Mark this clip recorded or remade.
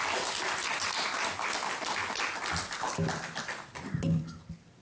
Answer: recorded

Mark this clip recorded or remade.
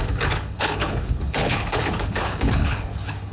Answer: remade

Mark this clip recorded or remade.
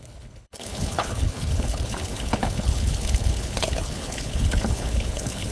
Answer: remade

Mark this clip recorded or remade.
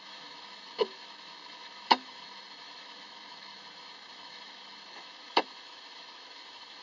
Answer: remade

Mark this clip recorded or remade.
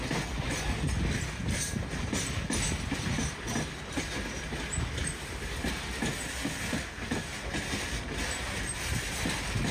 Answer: recorded